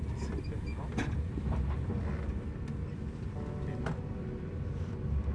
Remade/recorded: recorded